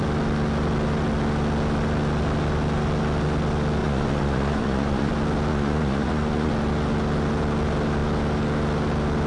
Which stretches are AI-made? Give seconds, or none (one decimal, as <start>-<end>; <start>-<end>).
3.8-5.1; 5.5-6.5